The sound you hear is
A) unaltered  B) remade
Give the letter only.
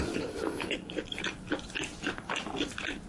A